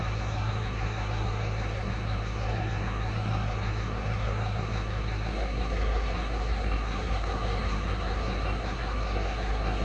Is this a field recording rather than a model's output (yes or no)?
no